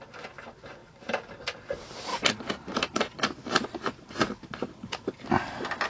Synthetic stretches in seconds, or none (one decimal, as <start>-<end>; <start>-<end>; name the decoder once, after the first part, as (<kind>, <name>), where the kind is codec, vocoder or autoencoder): 0.8-1.3 (vocoder, BigVGAN v2); 2.1-3.0